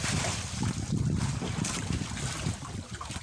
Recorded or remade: recorded